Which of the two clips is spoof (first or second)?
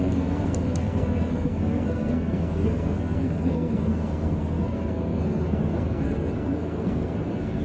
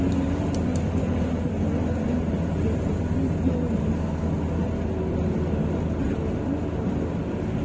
first